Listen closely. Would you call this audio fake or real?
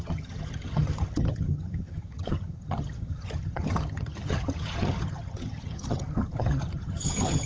fake